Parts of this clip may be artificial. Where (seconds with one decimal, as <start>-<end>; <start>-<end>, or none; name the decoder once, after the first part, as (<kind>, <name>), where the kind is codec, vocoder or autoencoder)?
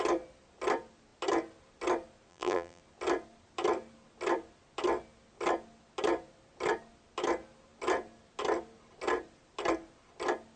2.3-2.8 (vocoder, BigVGAN v2)